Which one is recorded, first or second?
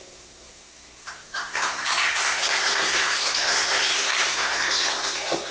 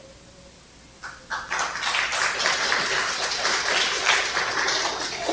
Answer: second